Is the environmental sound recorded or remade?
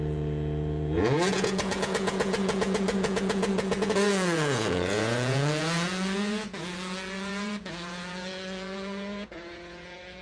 remade